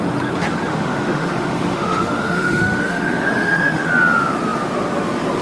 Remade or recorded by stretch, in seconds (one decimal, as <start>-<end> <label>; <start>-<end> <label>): 0.0-0.7 recorded; 0.7-3.9 remade; 3.9-5.4 recorded